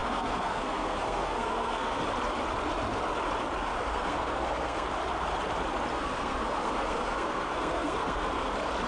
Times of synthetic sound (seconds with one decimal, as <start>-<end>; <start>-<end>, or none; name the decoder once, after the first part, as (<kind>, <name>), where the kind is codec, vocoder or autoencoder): 0.0-2.0 (codec, SNAC); 3.9-4.9; 5.9-8.5